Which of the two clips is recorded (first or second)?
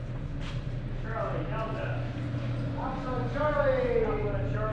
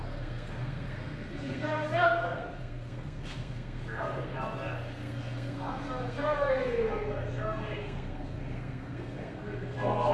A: first